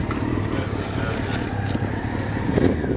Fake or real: real